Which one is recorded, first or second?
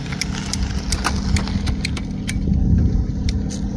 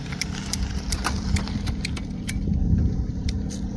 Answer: first